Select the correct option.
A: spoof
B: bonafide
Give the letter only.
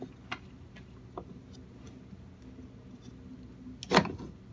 B